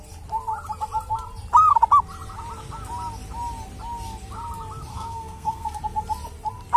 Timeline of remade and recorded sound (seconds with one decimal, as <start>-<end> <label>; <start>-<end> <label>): 0.0-4.9 recorded; 4.9-5.8 remade; 5.8-6.8 recorded